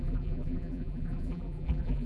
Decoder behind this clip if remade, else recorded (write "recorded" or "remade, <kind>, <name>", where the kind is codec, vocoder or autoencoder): remade, vocoder, BigVGAN v2